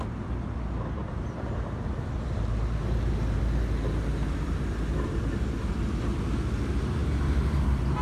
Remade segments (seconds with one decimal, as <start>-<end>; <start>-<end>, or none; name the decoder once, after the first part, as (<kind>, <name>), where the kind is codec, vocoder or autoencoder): 1.0-5.2 (vocoder, BigVGAN v2)